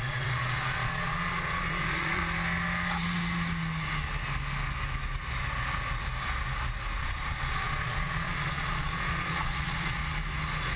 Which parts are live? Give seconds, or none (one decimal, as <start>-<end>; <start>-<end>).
2.2-7.0; 10.0-10.8